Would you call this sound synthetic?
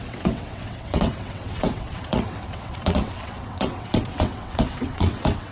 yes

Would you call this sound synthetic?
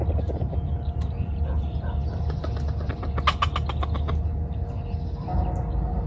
no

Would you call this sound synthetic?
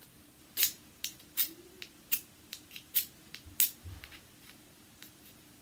yes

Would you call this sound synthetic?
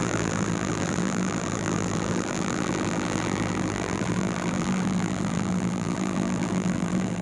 yes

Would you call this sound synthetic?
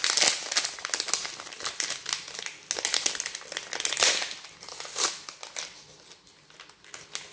no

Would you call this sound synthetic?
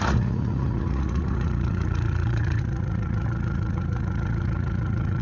yes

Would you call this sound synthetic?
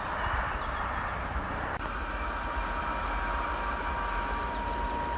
no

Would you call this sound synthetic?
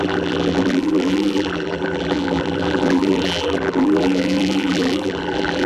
yes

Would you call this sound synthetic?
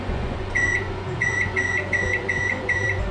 yes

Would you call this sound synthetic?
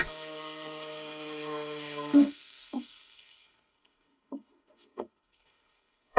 yes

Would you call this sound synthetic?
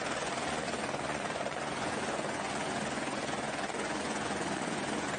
yes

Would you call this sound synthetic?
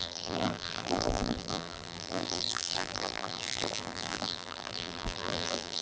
yes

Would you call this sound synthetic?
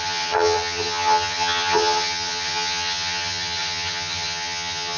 yes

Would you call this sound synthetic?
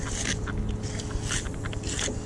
no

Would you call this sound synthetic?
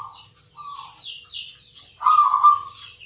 no